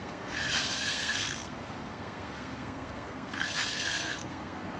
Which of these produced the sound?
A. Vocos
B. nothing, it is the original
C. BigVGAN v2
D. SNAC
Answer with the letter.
D